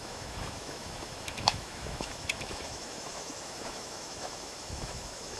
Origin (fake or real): fake